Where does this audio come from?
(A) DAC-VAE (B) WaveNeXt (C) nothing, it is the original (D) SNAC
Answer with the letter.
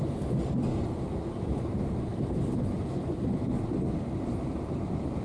C